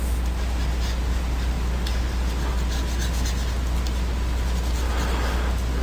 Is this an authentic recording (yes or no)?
yes